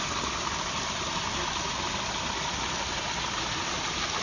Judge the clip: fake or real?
real